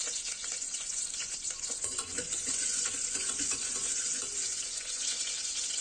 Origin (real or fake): fake